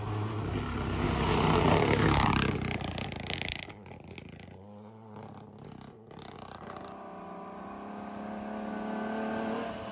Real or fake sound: real